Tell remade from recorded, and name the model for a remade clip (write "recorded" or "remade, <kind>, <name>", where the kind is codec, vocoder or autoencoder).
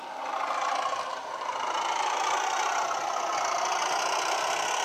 recorded